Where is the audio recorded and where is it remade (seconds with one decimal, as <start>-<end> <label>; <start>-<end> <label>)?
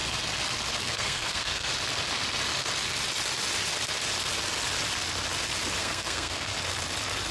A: 0.0-0.8 recorded; 0.8-1.7 remade; 1.7-5.8 recorded; 5.8-6.5 remade; 6.5-7.3 recorded